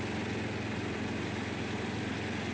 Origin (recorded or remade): recorded